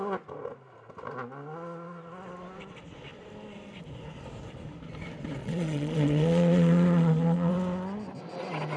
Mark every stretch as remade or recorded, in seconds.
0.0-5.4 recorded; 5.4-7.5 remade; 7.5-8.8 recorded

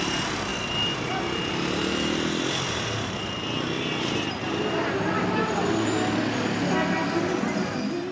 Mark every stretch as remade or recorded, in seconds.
0.0-8.1 recorded